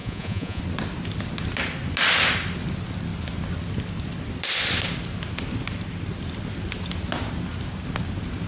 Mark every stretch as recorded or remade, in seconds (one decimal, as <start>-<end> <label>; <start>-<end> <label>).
0.0-0.6 remade; 0.6-8.5 recorded